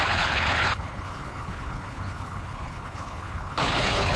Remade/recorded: remade